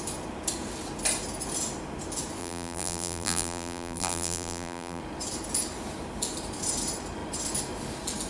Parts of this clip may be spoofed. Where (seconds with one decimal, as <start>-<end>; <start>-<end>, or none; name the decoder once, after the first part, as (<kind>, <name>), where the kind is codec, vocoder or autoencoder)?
2.4-5.0 (vocoder, BigVGAN v2)